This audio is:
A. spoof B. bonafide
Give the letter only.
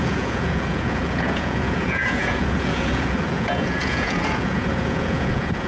A